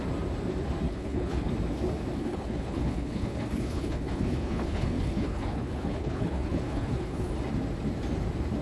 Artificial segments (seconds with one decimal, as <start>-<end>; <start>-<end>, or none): 0.9-1.5; 2.2-7.3